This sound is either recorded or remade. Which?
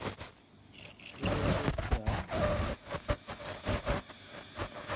recorded